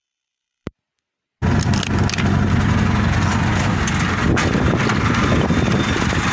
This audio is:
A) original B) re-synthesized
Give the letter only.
A